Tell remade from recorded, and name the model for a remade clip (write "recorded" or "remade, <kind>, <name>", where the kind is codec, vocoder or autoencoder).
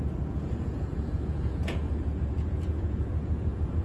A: remade, vocoder, Vocos